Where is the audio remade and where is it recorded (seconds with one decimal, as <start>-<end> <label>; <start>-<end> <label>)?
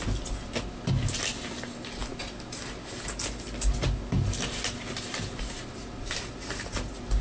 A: 0.0-7.2 recorded